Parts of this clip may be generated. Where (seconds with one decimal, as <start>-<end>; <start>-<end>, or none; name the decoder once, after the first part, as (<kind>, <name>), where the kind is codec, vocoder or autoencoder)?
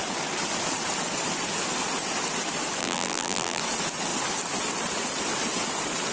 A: 2.8-3.6 (vocoder, BigVGAN v2)